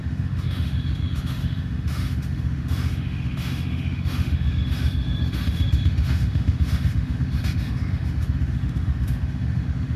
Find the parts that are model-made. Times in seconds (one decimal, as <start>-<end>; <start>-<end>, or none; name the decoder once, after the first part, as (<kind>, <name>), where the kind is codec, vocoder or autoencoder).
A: 0.0-10.0 (autoencoder, DAC-VAE)